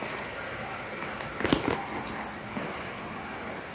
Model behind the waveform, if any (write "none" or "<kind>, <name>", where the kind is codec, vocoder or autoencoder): none